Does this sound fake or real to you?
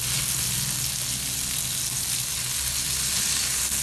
real